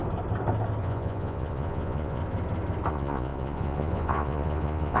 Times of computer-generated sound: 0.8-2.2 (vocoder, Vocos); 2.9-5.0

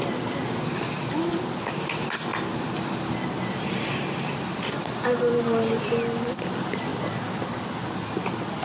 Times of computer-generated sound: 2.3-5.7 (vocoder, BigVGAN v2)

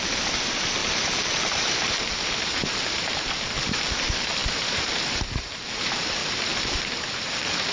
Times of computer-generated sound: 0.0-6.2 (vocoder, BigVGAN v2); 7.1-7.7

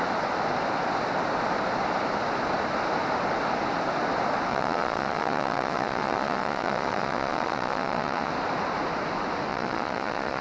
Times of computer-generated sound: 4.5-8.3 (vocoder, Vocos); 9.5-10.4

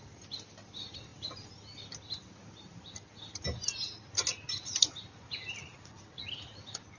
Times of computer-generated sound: 5.6-6.2 (vocoder, Vocos)

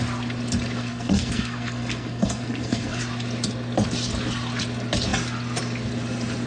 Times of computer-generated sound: 0.8-3.0 (codec, SNAC)

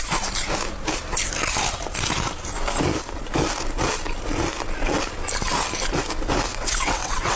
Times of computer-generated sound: 6.5-7.4 (vocoder, WaveNeXt)